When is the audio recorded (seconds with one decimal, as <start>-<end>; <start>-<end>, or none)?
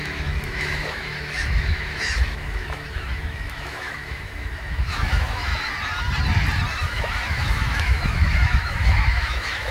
5.5-6.7